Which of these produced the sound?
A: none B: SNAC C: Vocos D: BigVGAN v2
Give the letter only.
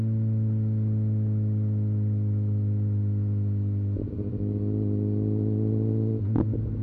A